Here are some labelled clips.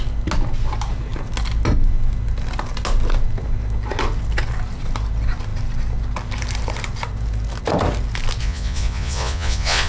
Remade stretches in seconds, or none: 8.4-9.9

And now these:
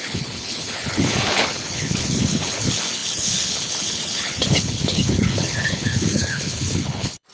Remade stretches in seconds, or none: 0.0-7.3

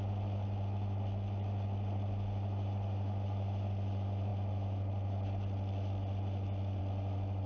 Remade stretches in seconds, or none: none

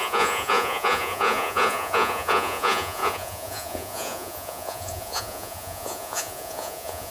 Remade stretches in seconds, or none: 0.0-7.1

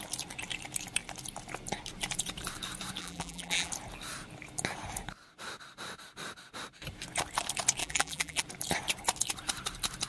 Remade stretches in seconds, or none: 3.0-3.7; 7.8-8.4